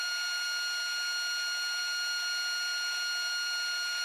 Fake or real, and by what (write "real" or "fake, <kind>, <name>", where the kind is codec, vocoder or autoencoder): real